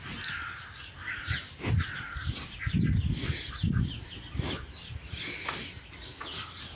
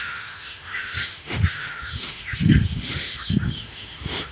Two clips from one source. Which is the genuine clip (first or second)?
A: first